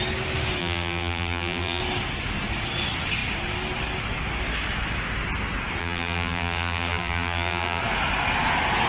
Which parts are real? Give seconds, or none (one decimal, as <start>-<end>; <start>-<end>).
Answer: 0.0-0.6; 1.8-5.8; 7.8-8.9